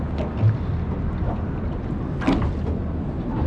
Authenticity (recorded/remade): recorded